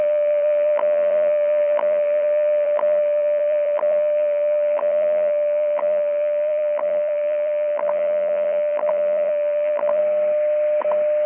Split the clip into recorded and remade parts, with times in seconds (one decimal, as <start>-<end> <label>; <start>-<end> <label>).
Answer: 0.0-10.0 remade; 10.0-11.3 recorded